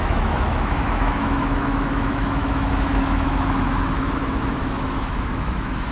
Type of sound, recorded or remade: remade